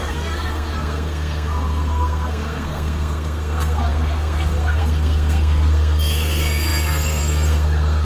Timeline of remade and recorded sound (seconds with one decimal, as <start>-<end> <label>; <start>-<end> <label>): 0.0-8.0 remade